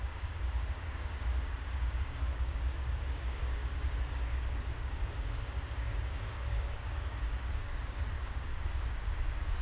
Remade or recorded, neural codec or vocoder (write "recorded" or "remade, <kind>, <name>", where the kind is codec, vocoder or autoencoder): remade, codec, DAC